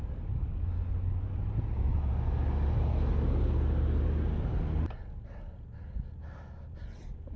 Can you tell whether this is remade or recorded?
recorded